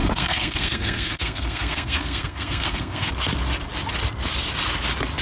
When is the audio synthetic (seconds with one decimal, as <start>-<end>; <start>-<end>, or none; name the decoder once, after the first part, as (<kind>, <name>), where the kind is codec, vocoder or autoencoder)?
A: 0.0-3.1 (codec, SNAC)

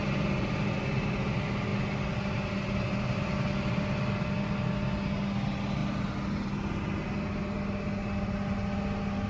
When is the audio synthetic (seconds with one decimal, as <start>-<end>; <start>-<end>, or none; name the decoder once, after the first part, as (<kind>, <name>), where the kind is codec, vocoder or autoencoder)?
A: none

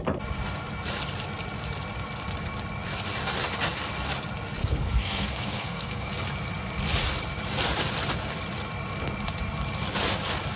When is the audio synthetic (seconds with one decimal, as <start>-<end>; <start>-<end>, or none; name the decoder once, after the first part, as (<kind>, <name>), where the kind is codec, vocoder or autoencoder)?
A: 4.6-6.1 (codec, SNAC)

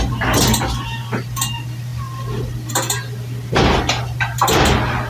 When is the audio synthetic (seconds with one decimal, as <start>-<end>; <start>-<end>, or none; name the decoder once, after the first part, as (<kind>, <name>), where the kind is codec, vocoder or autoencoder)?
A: none

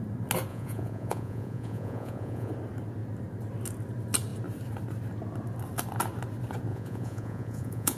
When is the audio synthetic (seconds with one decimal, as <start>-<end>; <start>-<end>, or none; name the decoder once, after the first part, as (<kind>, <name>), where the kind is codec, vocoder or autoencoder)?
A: 0.5-2.5 (vocoder, Vocos); 6.7-8.0

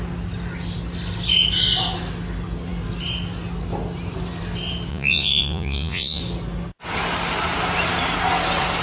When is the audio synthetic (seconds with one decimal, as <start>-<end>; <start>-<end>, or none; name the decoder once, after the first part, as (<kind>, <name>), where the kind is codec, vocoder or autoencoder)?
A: 4.9-6.2 (vocoder, Vocos)